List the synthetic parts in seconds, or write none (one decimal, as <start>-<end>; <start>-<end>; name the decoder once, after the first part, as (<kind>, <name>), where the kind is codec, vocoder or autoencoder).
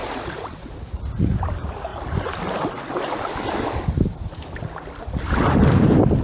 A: 0.0-1.4 (vocoder, Vocos)